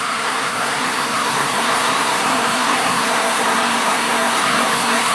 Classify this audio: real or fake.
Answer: fake